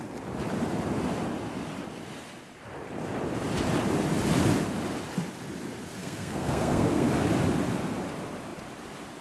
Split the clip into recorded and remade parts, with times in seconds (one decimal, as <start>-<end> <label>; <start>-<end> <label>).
0.0-6.0 recorded; 6.0-7.1 remade; 7.1-9.2 recorded